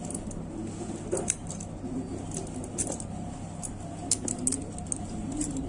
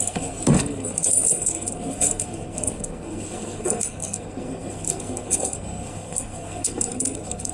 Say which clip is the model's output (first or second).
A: second